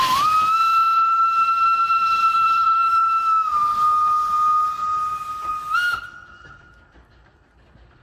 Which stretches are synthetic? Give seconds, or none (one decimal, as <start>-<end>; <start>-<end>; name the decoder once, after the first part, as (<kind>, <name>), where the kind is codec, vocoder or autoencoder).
1.8-3.0 (vocoder, BigVGAN v2)